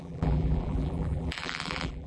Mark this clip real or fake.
fake